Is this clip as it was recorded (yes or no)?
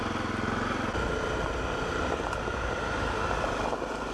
yes